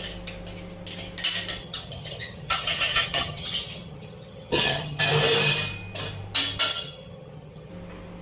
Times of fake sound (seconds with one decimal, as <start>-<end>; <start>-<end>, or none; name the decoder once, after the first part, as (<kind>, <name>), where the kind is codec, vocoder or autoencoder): 1.6-5.0 (vocoder, HiFi-GAN); 6.7-7.7